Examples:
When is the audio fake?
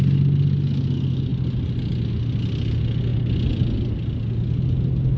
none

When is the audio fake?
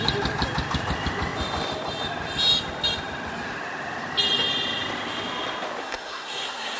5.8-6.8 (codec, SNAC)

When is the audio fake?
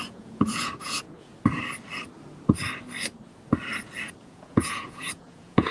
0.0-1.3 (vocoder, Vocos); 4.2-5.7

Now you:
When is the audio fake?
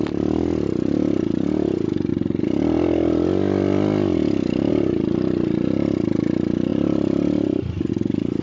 none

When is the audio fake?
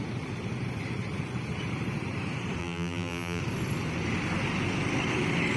2.6-3.4 (vocoder, BigVGAN v2)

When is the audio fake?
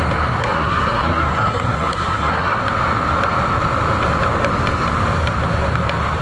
0.4-2.6 (codec, SNAC)